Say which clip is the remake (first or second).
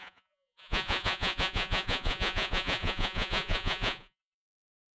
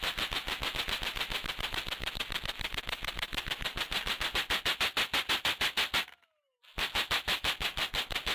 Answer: first